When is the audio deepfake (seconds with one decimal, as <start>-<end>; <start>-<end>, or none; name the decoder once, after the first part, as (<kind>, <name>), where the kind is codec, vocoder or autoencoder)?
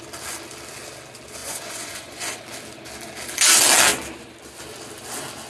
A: 1.4-2.4 (vocoder, Vocos)